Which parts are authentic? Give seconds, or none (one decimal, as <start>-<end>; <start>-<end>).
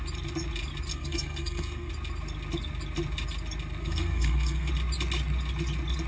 0.0-0.9; 1.9-3.8; 4.7-6.1